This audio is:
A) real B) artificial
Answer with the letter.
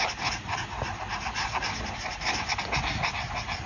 A